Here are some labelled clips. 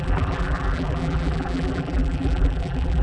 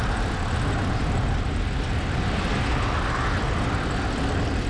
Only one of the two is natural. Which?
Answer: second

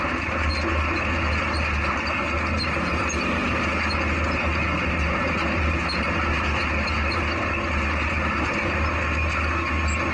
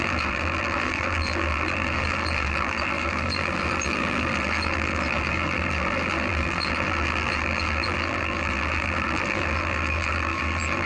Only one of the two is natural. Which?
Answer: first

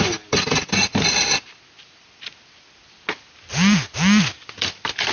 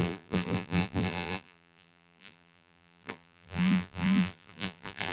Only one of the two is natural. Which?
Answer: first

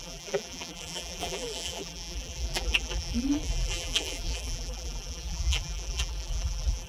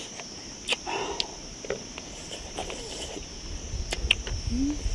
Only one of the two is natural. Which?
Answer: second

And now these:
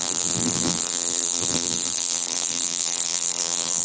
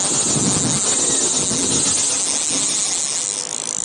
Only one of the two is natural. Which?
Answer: second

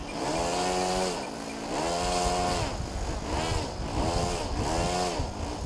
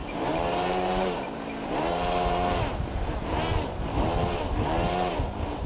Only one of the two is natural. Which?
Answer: first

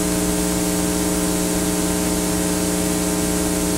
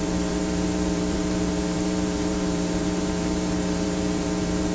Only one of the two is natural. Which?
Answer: first